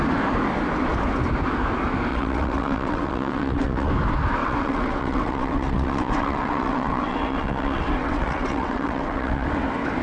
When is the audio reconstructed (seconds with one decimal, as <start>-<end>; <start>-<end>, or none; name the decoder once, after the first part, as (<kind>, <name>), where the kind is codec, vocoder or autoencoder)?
2.1-3.9 (vocoder, WaveNeXt); 4.4-9.5